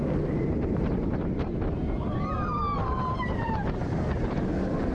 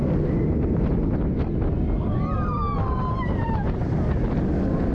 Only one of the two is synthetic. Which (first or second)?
first